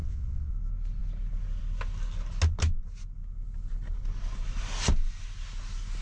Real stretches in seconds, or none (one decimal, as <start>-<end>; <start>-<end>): 0.5-6.0